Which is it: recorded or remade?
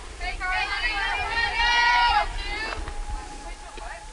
recorded